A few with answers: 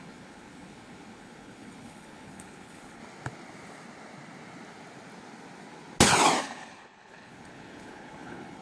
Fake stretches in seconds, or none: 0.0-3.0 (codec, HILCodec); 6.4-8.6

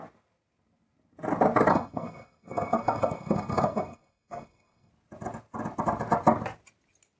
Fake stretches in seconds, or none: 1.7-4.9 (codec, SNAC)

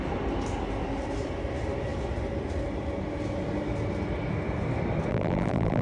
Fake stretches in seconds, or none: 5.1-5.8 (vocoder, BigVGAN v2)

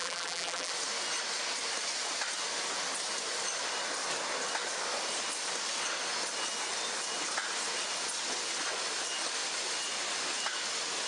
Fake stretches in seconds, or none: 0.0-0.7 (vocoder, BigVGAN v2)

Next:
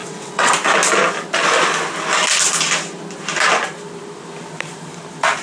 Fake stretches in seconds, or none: 0.0-0.5 (vocoder, WaveNeXt)

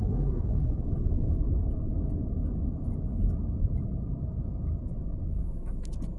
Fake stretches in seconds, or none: 0.0-0.7 (codec, SNAC)